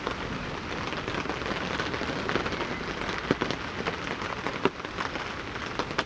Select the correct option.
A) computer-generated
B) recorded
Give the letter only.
B